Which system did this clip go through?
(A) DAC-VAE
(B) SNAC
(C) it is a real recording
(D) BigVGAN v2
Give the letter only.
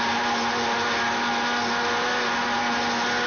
C